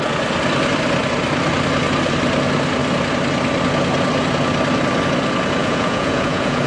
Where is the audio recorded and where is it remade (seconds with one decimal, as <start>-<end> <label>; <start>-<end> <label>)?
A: 0.0-5.6 recorded; 5.6-6.7 remade